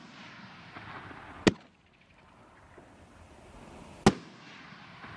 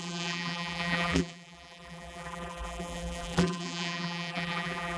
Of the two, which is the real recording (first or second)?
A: first